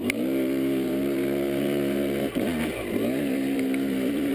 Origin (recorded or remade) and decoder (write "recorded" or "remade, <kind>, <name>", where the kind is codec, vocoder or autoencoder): remade, vocoder, BigVGAN v2